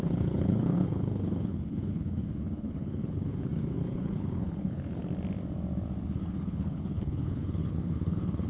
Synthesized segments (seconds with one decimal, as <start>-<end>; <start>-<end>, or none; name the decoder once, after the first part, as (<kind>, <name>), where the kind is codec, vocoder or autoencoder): 0.0-5.0 (codec, HILCodec); 6.0-8.5